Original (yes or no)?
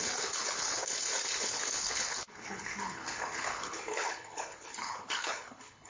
no